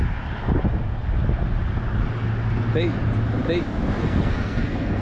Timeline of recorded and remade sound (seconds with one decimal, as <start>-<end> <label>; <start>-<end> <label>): 0.0-4.0 recorded; 4.0-5.0 remade